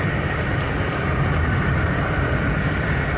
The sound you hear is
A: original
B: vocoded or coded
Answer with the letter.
A